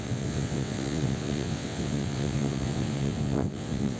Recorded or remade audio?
remade